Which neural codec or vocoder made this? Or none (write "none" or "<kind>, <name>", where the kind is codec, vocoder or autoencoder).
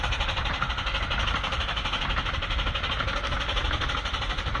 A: none